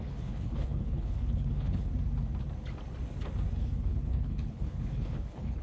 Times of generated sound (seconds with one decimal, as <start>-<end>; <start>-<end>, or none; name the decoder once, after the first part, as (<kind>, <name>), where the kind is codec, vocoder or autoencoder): 0.0-1.9 (codec, HILCodec); 3.6-5.6